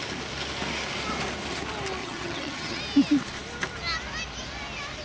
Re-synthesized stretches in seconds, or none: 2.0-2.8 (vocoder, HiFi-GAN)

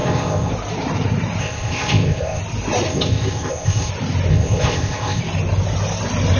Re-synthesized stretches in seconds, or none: 0.0-0.5 (codec, ZipCodec); 1.4-2.4; 2.9-3.9; 4.3-5.2

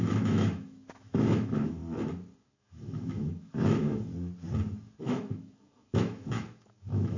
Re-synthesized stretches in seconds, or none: 0.0-1.8 (autoencoder, DAC-VAE); 2.4-4.1; 5.0-7.2